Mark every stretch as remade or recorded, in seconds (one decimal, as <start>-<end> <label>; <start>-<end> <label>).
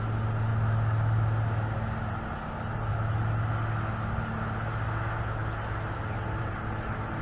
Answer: 0.0-7.2 recorded